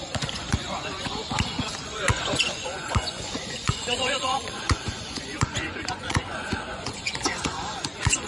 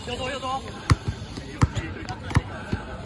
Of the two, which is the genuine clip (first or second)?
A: second